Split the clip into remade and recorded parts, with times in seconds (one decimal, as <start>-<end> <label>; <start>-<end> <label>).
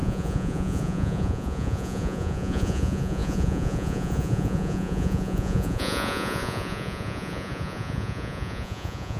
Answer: 0.0-9.2 remade